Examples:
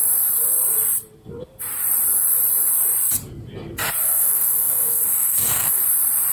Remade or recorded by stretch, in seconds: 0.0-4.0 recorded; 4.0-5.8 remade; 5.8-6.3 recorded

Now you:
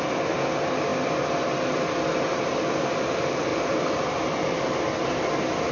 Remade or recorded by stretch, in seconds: 0.0-5.7 recorded

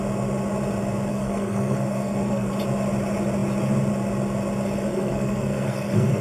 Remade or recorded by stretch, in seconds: 0.0-1.1 recorded; 1.1-2.5 remade; 2.5-4.9 recorded; 4.9-6.2 remade

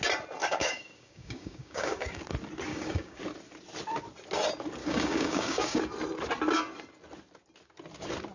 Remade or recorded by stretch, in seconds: 0.0-0.4 recorded; 0.4-2.2 remade; 2.2-2.7 recorded; 2.7-3.2 remade; 3.2-4.8 recorded; 4.8-5.8 remade; 5.8-8.3 recorded

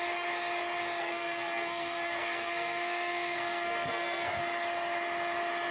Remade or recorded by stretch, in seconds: 0.0-1.0 recorded; 1.0-4.4 remade; 4.4-5.7 recorded

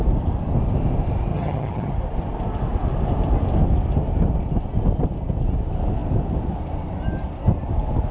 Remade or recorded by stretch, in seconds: 0.0-1.3 recorded; 1.3-1.9 remade; 1.9-8.1 recorded